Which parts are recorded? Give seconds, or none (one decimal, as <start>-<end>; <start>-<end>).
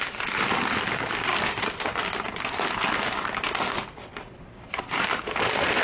0.0-5.8